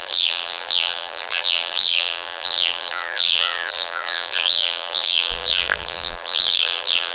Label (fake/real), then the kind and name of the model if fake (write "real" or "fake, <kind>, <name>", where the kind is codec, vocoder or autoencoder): fake, vocoder, BigVGAN v2